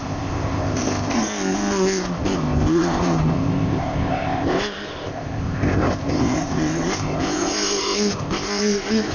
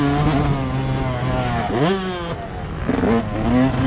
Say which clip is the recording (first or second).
second